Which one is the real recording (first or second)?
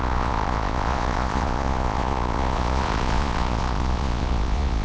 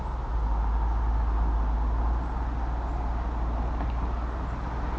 second